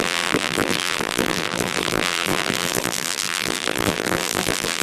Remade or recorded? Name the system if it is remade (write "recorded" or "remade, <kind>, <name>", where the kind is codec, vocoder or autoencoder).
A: remade, vocoder, BigVGAN v2